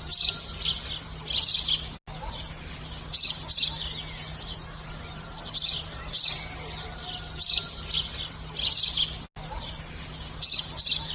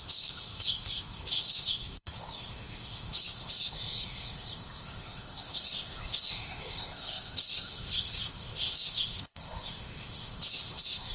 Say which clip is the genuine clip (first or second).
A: first